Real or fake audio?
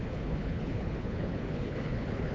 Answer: fake